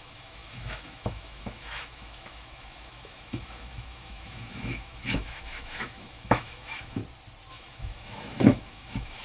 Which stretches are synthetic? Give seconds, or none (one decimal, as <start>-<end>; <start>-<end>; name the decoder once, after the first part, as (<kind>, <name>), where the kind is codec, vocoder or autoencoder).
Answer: 0.0-7.0 (autoencoder, DAC-VAE); 7.5-9.2